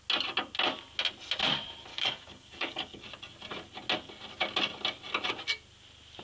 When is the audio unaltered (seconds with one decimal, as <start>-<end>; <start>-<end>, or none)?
0.0-1.9; 3.1-6.2